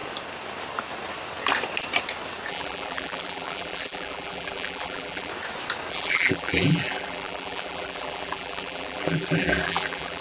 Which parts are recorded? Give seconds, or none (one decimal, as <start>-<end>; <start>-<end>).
0.0-2.5; 5.3-5.9